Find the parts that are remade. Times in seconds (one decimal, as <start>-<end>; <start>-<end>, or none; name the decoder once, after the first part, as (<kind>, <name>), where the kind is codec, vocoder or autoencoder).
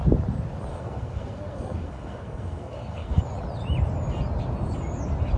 0.7-3.2 (codec, SNAC)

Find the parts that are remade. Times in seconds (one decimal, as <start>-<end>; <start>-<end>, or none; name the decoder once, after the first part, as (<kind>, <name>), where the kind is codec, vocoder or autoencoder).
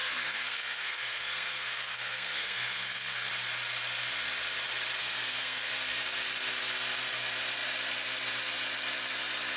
0.0-3.3 (codec, SNAC); 5.0-5.7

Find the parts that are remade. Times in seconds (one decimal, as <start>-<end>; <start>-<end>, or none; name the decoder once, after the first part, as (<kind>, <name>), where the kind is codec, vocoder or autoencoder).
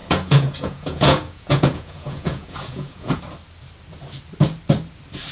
0.0-3.2 (vocoder, Vocos)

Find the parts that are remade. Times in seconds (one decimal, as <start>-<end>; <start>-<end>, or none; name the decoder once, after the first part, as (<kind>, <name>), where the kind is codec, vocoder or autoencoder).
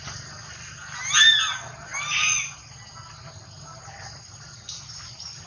none